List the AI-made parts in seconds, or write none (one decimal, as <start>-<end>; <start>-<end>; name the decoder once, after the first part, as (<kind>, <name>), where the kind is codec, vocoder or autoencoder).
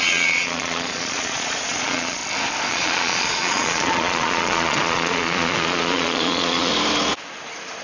0.0-2.2 (vocoder, Vocos); 2.7-6.7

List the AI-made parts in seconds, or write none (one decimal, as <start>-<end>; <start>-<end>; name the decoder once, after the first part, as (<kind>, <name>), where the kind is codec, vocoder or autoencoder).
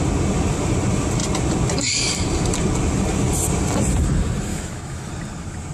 4.5-5.1 (autoencoder, DAC-VAE)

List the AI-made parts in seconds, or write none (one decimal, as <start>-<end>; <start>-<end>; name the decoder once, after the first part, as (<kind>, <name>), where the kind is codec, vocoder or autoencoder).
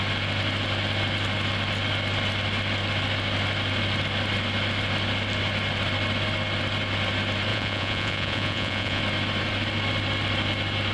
7.5-9.0 (vocoder, Vocos)